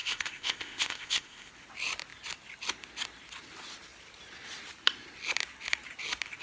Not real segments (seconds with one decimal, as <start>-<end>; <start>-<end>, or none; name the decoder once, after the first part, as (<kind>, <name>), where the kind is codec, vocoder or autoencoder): 0.0-1.5 (codec, ZipCodec)